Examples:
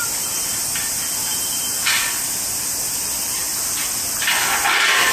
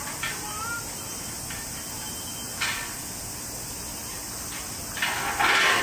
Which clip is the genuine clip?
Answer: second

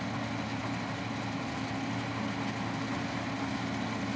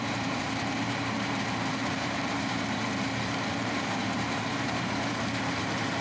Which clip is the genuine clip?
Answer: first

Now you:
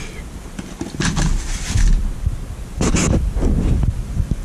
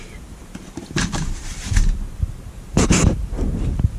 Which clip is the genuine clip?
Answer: first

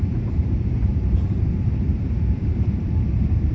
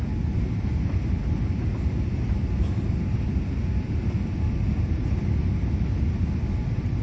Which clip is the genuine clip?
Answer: second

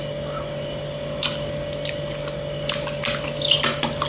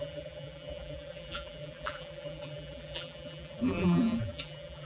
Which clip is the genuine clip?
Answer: first